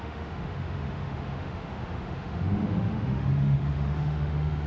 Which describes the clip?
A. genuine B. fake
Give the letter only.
B